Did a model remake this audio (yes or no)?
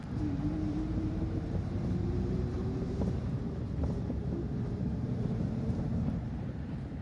yes